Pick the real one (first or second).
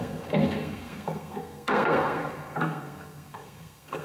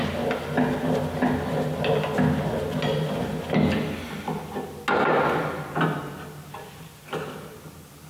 second